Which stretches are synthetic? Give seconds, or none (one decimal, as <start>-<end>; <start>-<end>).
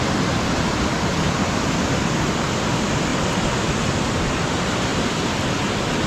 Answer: 0.0-3.1; 4.1-4.9